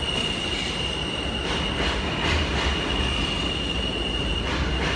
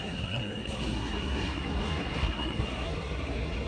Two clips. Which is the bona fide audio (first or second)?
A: first